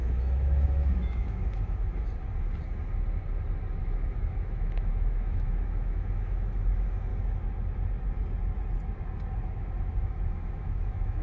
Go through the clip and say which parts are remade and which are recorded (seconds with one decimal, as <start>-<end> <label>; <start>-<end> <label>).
0.0-2.1 remade; 2.1-3.8 recorded; 3.8-7.1 remade; 7.1-10.0 recorded; 10.0-11.2 remade